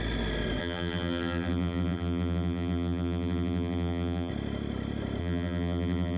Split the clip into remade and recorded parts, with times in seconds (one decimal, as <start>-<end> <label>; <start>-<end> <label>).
0.0-0.6 recorded; 0.6-4.3 remade; 4.3-5.2 recorded; 5.2-6.2 remade